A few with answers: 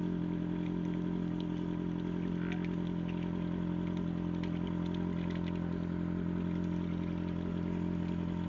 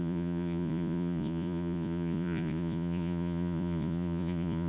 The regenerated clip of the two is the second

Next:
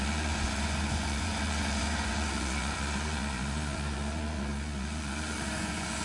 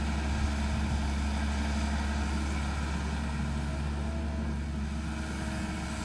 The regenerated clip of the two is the first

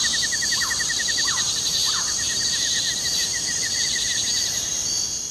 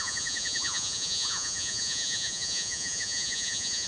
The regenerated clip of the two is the second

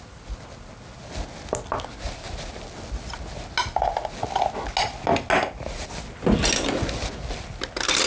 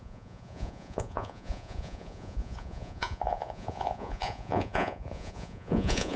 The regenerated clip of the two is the second